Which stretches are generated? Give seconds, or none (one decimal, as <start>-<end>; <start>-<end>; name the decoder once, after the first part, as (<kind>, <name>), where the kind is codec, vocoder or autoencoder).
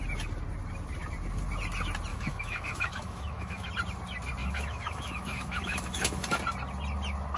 2.1-3.7 (autoencoder, DAC-VAE); 4.4-6.4